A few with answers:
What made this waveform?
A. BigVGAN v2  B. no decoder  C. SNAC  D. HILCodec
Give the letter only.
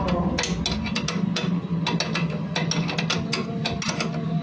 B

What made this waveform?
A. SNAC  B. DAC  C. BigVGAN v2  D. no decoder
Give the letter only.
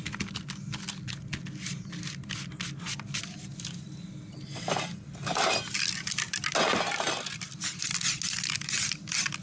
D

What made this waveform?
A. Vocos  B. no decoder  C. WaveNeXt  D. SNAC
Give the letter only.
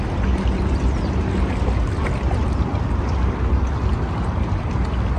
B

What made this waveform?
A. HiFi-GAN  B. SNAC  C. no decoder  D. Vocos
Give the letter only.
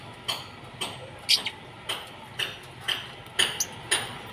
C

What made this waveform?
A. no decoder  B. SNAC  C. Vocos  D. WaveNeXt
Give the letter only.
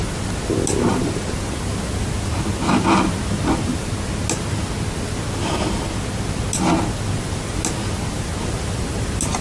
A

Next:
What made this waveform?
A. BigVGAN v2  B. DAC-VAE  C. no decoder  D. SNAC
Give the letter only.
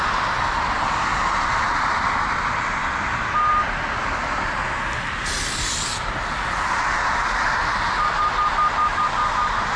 C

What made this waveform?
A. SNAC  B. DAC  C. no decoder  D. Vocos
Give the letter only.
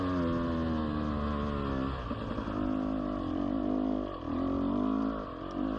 C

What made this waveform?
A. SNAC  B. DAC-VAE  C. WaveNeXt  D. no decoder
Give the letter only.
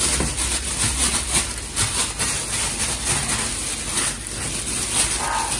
D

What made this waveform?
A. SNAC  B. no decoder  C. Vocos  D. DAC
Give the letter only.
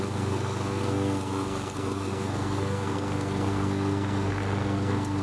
A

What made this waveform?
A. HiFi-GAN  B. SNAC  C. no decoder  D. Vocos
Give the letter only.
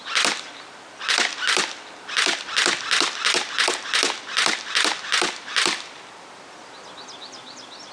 C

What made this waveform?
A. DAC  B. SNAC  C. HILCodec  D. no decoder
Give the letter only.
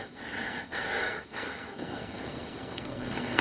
B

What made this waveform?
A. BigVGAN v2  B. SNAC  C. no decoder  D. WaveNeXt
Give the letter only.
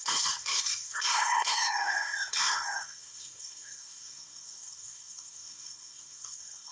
B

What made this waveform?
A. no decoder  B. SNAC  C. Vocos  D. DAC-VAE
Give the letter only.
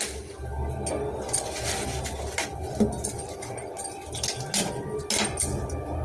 A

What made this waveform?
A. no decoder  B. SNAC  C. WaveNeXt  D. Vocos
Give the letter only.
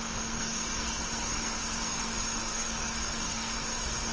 B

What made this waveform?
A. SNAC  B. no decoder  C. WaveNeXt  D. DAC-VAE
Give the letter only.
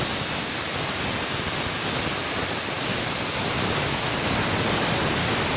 B